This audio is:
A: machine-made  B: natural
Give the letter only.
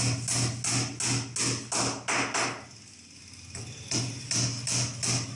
B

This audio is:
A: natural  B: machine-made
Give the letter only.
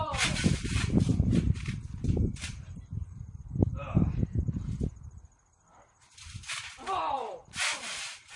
B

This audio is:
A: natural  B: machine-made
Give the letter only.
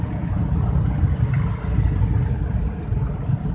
A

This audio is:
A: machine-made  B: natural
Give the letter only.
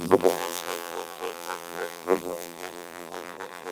A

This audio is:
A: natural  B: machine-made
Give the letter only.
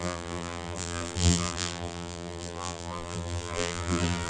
B